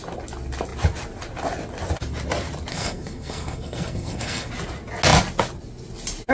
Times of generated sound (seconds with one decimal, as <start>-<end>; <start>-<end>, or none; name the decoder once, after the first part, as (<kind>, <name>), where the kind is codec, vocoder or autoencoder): 2.7-4.5 (codec, SNAC)